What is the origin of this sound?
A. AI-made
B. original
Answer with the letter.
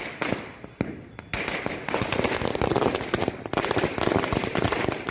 B